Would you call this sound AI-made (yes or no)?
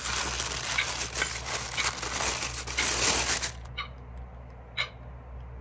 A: no